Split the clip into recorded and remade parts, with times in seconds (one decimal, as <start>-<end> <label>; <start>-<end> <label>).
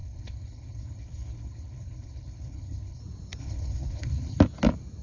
0.0-3.0 remade; 3.0-3.4 recorded; 3.4-4.4 remade; 4.4-5.0 recorded